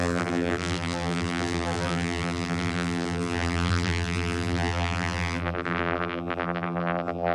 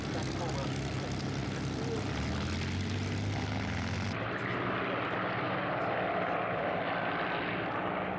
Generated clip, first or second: first